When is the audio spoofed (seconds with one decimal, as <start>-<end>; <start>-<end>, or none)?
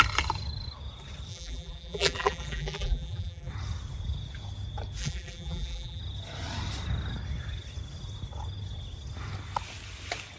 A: 1.3-3.5; 5.0-6.0